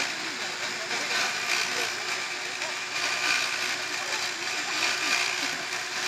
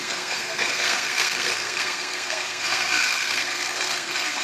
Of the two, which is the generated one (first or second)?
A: second